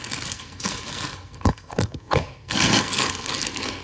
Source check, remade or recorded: remade